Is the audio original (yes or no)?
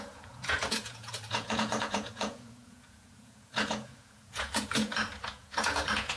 no